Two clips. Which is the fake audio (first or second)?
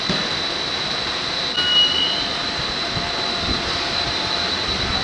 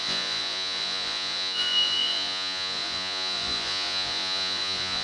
second